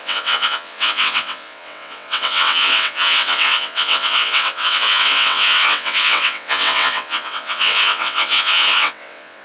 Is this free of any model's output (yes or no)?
no